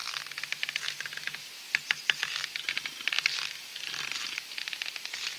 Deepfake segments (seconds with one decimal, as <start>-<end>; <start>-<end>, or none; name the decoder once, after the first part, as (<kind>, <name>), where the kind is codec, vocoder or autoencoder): none